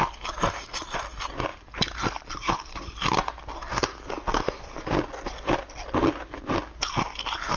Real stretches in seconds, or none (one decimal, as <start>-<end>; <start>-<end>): 0.0-7.6